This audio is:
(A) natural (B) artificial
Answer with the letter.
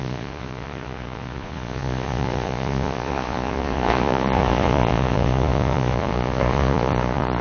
B